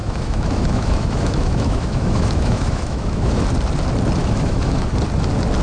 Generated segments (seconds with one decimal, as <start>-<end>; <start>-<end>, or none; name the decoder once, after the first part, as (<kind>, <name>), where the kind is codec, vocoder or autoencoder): 0.0-3.4 (autoencoder, DAC-VAE); 4.2-4.9